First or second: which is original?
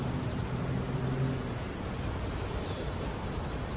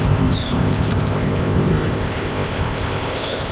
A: first